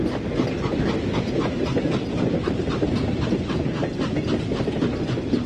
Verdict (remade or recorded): recorded